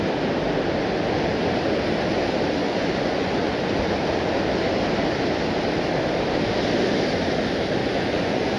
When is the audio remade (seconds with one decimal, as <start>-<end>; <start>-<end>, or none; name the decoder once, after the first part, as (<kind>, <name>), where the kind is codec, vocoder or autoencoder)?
2.6-3.6 (vocoder, Vocos); 7.8-8.6